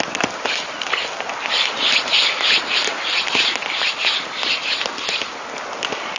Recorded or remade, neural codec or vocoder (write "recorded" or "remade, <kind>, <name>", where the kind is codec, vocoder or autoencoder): recorded